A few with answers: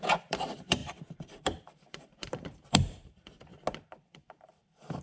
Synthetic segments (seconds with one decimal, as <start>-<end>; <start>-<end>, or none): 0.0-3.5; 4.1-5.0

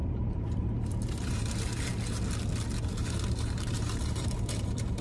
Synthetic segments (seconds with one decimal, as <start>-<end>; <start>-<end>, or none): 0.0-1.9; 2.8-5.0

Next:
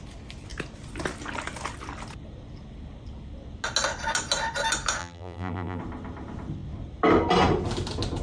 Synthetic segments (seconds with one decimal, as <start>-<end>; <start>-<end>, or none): 5.0-5.8

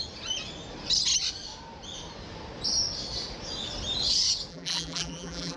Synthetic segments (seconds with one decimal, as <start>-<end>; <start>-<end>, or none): 4.5-5.6

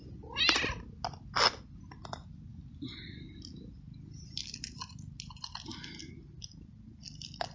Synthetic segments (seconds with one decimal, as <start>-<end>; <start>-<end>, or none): none

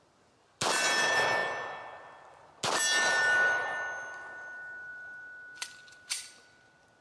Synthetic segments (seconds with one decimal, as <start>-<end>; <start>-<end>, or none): 4.9-6.2

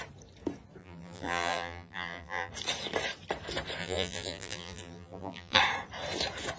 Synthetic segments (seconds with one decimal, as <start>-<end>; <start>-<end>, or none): 0.8-2.5; 3.8-5.6

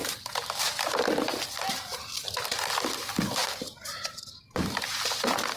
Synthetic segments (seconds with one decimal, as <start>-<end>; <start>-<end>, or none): 0.0-1.4; 1.9-5.6